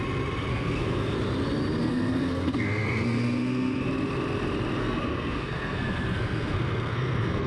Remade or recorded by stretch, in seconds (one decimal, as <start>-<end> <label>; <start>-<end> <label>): 0.0-0.5 recorded; 0.5-1.2 remade; 1.2-1.8 recorded; 1.8-3.9 remade; 3.9-4.8 recorded; 4.8-7.5 remade